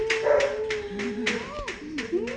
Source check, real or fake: real